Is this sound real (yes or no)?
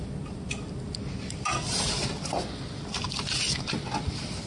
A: yes